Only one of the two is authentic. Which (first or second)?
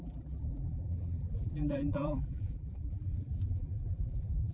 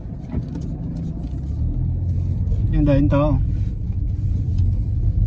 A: second